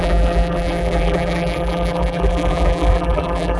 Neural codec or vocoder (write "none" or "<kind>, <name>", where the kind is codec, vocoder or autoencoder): vocoder, BigVGAN v2